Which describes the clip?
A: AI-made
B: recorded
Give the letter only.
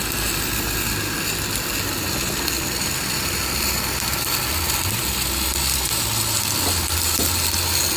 B